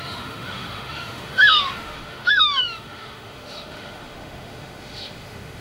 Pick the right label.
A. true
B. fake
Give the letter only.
B